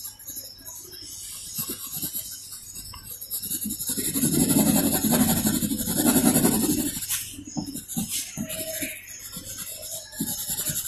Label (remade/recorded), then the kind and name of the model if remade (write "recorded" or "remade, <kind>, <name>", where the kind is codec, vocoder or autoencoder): recorded